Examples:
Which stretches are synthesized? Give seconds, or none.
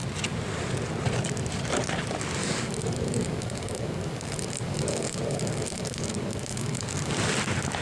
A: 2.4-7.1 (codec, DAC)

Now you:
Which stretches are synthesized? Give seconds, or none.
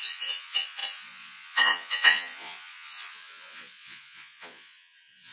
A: 0.0-5.3 (vocoder, Vocos)